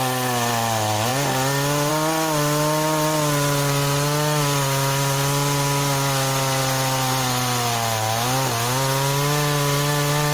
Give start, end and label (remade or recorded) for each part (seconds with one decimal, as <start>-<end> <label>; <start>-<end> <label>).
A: 0.0-10.3 recorded

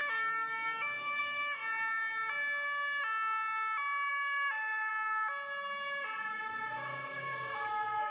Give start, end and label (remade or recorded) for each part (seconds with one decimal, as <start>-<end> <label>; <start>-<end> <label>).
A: 0.0-1.6 remade; 1.6-4.1 recorded; 4.1-4.9 remade; 4.9-6.3 recorded; 6.3-8.1 remade

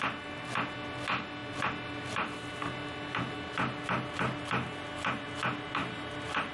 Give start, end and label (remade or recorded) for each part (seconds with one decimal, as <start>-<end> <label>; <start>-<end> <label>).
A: 0.0-5.8 recorded; 5.8-6.5 remade

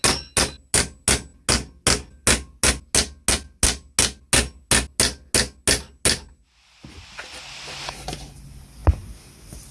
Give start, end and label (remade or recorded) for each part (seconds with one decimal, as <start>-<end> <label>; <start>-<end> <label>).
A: 0.0-9.7 recorded

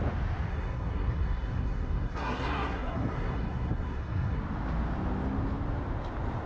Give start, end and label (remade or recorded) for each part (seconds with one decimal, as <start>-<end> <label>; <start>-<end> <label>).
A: 0.0-0.5 recorded; 0.5-4.4 remade; 4.4-6.5 recorded

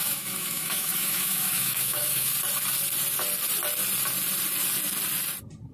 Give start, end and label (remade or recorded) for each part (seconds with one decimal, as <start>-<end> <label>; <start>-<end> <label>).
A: 0.0-2.3 remade; 2.3-5.7 recorded